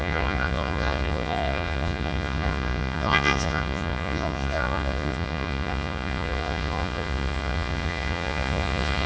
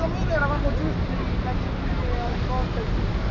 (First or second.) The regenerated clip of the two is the first